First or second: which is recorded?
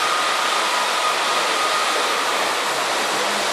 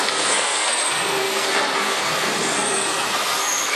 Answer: first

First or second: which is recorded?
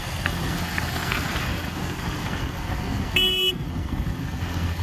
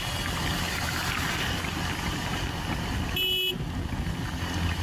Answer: second